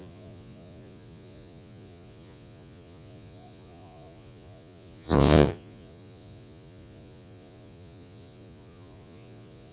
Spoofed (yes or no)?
yes